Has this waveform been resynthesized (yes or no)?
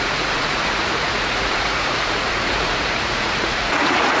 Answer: yes